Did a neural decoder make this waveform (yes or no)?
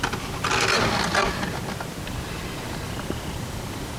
no